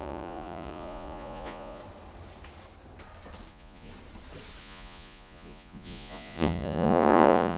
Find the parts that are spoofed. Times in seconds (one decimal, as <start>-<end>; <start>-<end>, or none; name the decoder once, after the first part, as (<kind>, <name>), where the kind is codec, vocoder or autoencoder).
0.0-1.8 (vocoder, Vocos); 3.5-3.9; 4.6-7.6